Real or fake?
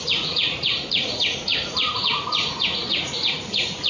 fake